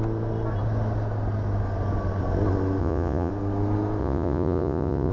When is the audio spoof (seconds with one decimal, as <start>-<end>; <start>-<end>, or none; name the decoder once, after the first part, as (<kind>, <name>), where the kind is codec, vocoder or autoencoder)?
2.8-3.3 (vocoder, Vocos); 4.0-5.1